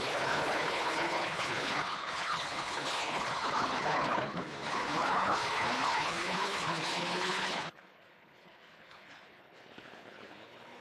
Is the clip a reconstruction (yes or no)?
yes